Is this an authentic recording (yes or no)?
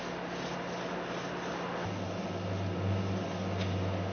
yes